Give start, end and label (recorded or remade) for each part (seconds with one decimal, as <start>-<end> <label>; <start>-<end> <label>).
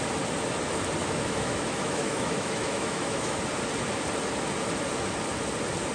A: 0.0-1.0 recorded; 1.0-3.4 remade; 3.4-5.9 recorded